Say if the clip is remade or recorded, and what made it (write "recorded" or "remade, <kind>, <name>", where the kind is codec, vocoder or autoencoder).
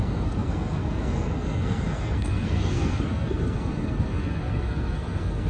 remade, codec, SNAC